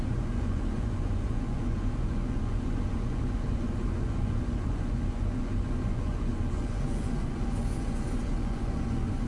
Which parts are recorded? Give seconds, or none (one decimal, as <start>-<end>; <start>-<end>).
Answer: none